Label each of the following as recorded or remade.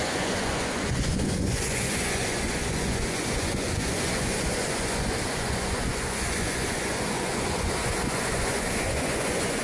remade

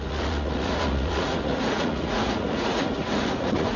remade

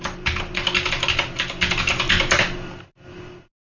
recorded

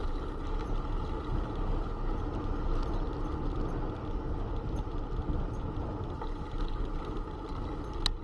recorded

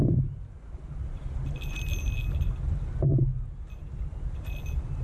recorded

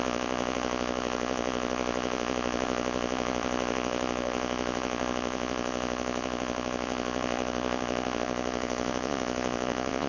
remade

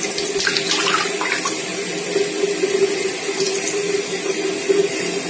recorded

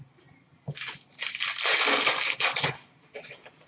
recorded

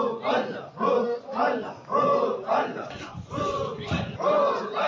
remade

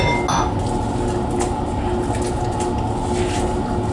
recorded